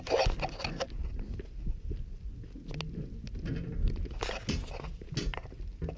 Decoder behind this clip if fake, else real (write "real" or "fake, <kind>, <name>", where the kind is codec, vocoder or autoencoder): real